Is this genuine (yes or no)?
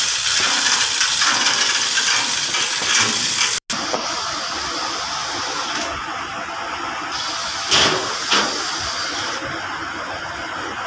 yes